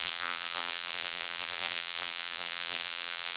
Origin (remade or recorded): remade